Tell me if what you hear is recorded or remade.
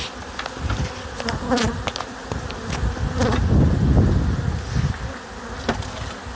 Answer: recorded